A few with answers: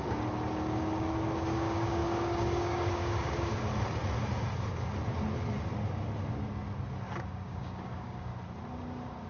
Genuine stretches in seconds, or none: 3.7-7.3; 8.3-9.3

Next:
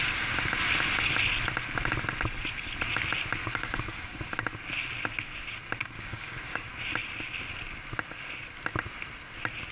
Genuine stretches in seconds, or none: 0.0-3.4; 4.3-5.8; 6.7-9.7

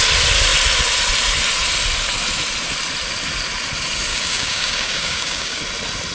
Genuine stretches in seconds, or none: 0.0-4.1; 5.6-6.1

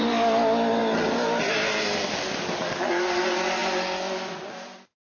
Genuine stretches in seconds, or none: 0.0-5.1

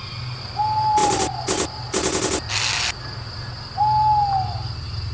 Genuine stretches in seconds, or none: 0.0-5.1

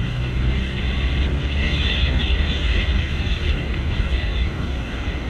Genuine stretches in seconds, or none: 0.8-1.4

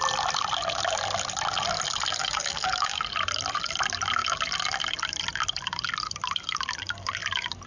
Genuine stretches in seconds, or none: 0.0-2.2; 3.0-7.7

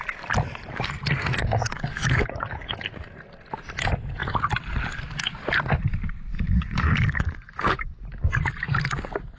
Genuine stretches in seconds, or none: 0.0-1.4; 2.9-6.3; 8.3-9.4